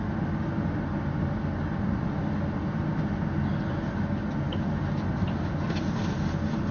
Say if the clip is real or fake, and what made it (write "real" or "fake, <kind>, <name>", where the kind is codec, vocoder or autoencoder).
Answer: real